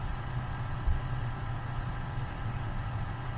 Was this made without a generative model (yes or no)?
no